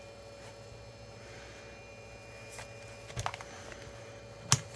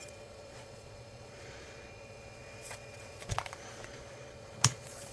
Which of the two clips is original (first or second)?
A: first